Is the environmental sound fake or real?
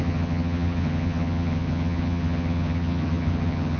fake